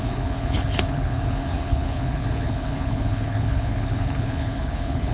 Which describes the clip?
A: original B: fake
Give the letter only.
B